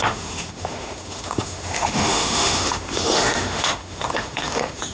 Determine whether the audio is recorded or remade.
remade